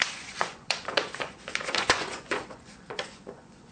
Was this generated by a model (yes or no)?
yes